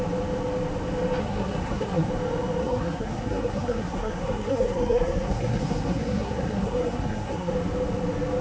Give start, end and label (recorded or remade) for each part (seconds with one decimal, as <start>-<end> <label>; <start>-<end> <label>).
0.0-1.2 recorded; 1.2-2.1 remade; 2.1-2.6 recorded; 2.6-7.5 remade; 7.5-8.4 recorded